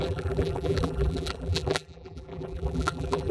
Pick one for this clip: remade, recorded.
remade